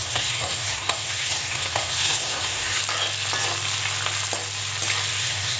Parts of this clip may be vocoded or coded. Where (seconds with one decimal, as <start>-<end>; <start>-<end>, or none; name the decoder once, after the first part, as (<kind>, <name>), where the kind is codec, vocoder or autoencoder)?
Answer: 0.0-2.8 (codec, SNAC); 5.1-5.6